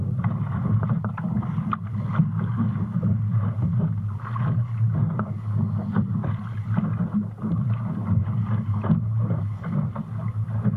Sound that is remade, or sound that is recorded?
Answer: recorded